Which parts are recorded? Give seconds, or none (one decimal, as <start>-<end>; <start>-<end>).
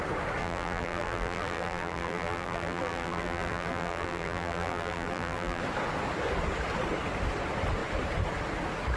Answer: 0.0-0.4; 5.6-9.0